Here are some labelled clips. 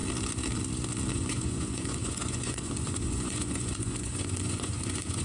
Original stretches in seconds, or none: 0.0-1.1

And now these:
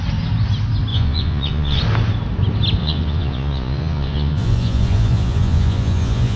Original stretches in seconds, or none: 0.0-0.9; 1.8-2.8

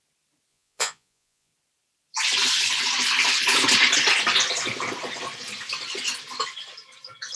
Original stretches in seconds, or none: 0.0-0.5; 1.5-7.4

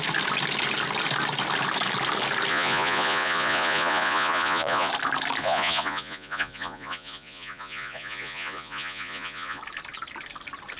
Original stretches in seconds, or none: 0.0-2.5; 4.9-5.4; 9.6-10.8

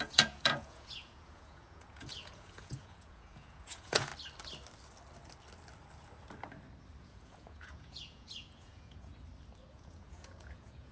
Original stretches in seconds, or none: 4.1-7.0; 9.1-9.7

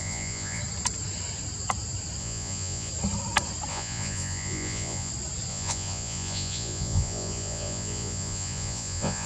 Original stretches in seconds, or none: 0.6-2.2; 2.9-3.7; 5.1-5.5